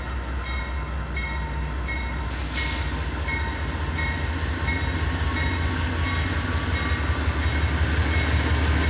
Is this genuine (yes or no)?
yes